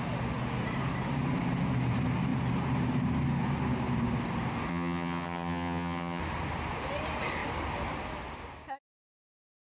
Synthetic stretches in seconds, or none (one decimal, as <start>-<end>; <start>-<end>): 4.7-6.2